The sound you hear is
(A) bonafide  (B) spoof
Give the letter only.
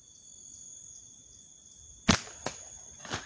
A